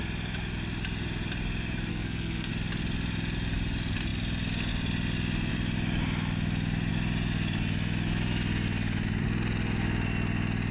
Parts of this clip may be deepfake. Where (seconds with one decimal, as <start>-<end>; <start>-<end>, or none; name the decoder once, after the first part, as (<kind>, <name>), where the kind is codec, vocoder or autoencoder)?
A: 1.9-2.5 (codec, SNAC)